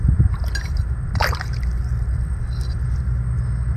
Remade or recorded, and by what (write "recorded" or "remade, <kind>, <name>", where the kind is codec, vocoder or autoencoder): remade, vocoder, BigVGAN v2